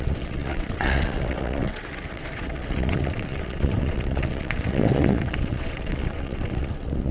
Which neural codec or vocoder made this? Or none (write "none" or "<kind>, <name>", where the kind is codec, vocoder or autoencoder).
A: vocoder, WaveNeXt